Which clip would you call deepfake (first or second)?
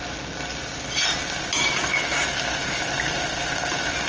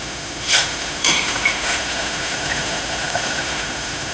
second